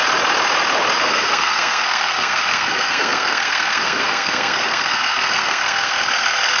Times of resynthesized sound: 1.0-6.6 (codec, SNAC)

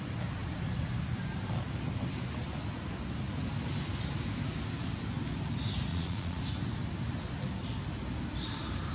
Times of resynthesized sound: 5.9-6.4 (vocoder, Vocos)

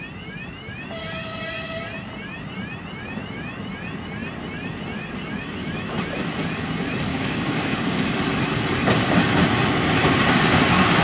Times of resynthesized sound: 7.1-8.1 (codec, DAC)

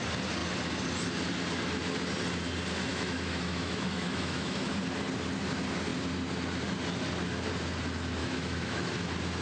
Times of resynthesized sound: 2.9-4.7 (autoencoder, DAC-VAE); 8.2-8.9